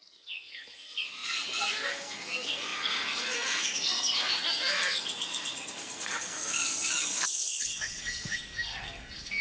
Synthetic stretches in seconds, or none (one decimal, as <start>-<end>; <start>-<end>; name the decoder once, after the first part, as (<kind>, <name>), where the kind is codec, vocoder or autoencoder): 0.0-9.4 (codec, SNAC)

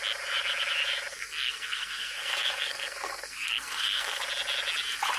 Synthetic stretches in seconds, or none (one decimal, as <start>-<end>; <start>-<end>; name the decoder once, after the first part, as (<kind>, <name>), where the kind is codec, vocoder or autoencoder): 1.1-4.2 (codec, SNAC)